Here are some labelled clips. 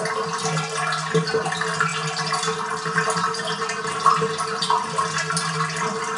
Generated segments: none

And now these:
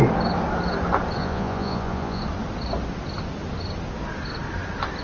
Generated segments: 1.2-2.2 (vocoder, Vocos)

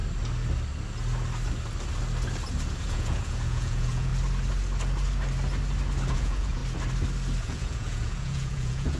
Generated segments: 2.8-4.1 (vocoder, Vocos); 6.1-6.6; 7.4-9.0